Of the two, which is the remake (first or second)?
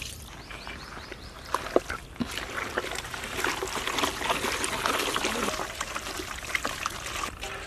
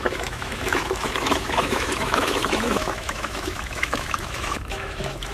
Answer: second